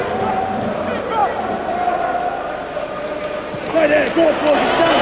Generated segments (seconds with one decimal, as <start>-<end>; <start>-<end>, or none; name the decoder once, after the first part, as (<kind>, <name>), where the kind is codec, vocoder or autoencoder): none